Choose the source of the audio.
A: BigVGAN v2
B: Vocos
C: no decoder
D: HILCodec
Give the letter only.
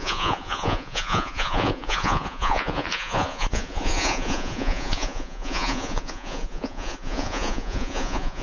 B